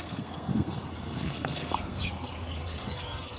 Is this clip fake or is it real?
fake